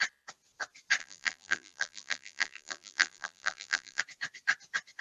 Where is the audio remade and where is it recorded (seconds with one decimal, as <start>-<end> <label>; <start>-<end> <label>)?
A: 0.0-1.0 recorded; 1.0-4.0 remade; 4.0-5.0 recorded